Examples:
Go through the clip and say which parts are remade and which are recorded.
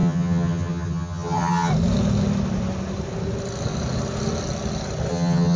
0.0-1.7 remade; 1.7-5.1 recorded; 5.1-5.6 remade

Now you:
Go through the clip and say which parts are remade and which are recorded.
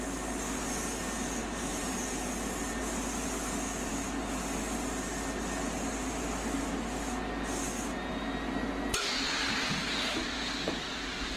0.0-1.7 recorded; 1.7-2.2 remade; 2.2-11.4 recorded